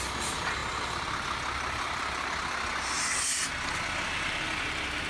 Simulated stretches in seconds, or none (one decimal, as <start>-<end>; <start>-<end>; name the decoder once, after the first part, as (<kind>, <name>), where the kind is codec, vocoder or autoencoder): none